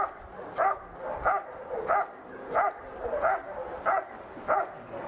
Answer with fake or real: real